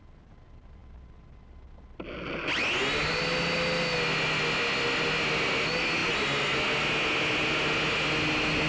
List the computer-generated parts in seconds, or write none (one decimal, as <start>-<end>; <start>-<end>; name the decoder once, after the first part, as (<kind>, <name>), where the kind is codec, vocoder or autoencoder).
none